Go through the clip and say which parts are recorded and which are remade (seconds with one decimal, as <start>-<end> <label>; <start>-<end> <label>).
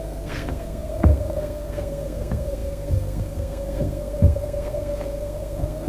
0.0-5.9 remade